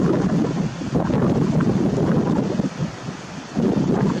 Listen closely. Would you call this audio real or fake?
real